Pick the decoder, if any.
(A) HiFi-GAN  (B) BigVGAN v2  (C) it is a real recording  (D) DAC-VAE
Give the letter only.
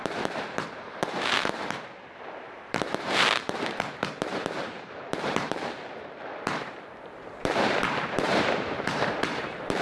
B